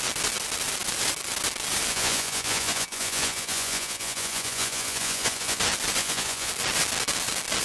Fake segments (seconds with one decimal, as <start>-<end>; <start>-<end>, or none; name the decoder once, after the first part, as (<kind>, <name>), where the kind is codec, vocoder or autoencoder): 1.9-5.6 (vocoder, Vocos); 6.0-6.5